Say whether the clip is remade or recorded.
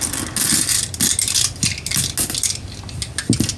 recorded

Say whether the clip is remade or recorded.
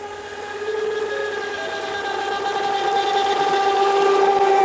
recorded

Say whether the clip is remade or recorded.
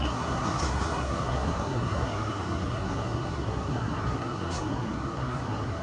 remade